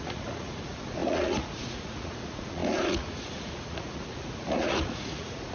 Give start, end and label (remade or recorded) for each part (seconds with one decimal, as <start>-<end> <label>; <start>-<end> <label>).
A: 0.0-5.5 remade